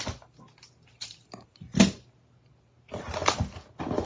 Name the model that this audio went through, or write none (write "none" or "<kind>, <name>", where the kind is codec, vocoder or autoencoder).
none